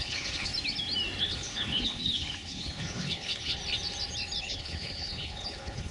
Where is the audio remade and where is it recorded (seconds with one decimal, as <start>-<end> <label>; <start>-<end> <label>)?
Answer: 0.0-0.5 remade; 0.5-1.2 recorded; 1.2-3.6 remade; 3.6-4.4 recorded; 4.4-5.9 remade